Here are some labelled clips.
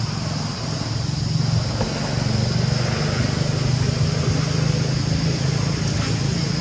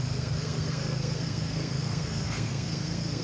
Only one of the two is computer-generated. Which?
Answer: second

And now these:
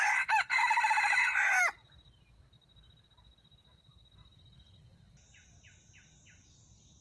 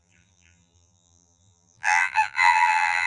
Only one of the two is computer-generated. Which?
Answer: second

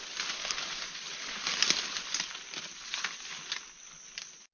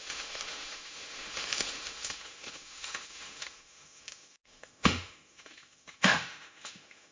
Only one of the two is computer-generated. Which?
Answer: second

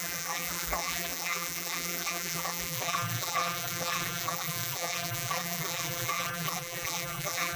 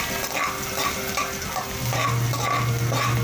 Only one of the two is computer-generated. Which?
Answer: first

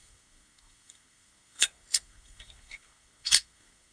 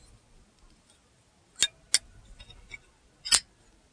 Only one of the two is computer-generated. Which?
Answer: first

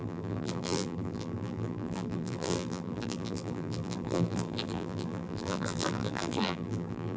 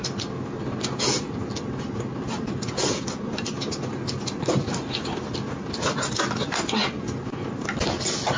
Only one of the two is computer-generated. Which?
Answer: first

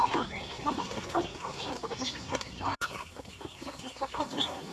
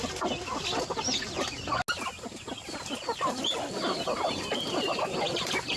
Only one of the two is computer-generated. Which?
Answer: first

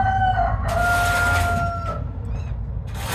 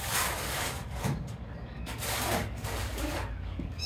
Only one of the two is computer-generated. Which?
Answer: second